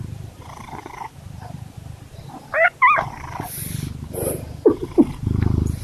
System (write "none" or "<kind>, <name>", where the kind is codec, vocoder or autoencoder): none